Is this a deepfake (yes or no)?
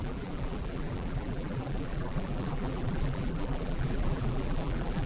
yes